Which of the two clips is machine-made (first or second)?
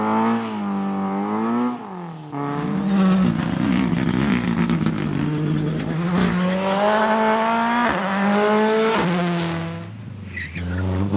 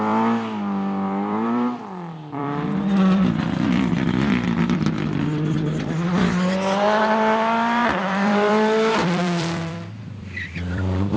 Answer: second